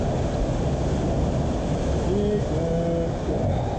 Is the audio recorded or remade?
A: recorded